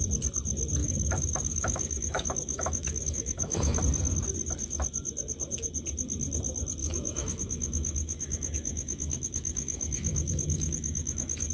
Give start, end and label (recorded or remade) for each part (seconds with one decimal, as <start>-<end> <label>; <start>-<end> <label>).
0.0-0.8 recorded; 0.8-3.8 remade; 3.8-6.8 recorded; 6.8-11.5 remade